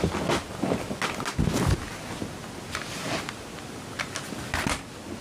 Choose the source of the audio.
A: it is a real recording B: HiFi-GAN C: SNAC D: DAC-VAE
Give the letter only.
A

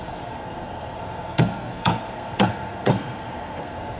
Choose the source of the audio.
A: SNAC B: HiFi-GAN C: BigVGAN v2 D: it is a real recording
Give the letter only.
A